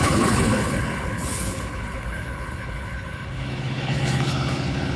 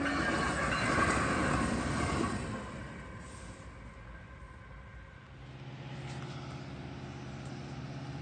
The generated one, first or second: first